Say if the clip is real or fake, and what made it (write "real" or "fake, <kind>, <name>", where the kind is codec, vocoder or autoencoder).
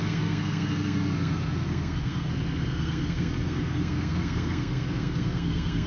fake, codec, SNAC